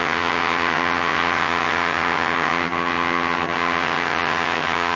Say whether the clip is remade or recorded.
remade